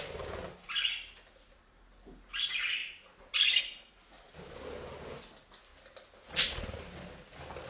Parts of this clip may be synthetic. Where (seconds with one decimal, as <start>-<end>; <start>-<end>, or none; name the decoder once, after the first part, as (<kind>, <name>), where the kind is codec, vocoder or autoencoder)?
none